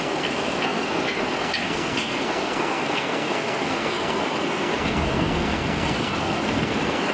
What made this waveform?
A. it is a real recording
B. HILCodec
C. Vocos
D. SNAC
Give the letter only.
D